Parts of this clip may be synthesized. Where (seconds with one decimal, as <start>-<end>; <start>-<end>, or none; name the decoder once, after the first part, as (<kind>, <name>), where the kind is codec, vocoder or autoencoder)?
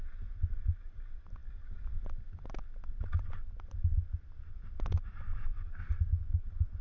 none